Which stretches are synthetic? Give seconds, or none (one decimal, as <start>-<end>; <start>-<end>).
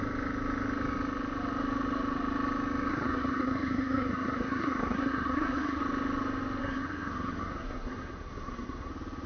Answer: 2.9-5.8; 6.6-8.9